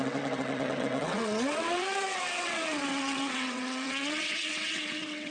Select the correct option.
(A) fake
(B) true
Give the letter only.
A